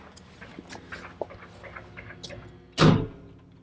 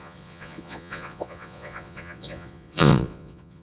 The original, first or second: first